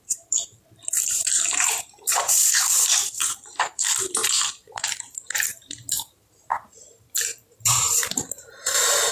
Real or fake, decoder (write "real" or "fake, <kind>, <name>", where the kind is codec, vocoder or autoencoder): fake, vocoder, BigVGAN v2